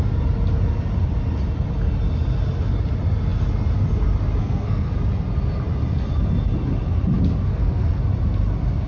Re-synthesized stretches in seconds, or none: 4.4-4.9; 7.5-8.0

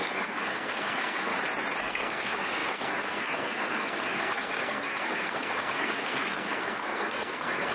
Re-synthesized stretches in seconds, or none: 0.0-1.3; 1.8-7.7

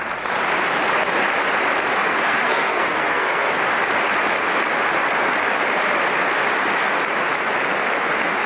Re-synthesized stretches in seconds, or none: 2.0-3.5

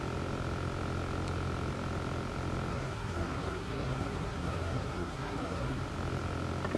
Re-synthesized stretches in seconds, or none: 2.7-5.8

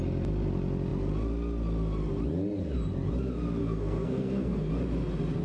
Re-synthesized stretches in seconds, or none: 3.6-4.7